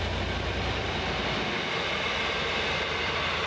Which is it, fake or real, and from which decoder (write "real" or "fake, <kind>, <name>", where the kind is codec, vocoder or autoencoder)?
real